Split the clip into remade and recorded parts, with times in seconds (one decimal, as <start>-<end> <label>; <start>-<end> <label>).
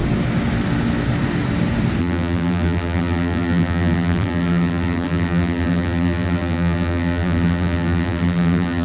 0.0-2.0 recorded; 2.0-8.8 remade